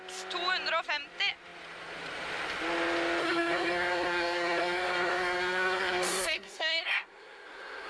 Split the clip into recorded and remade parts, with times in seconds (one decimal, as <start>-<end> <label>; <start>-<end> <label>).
0.0-3.2 recorded; 3.2-7.9 remade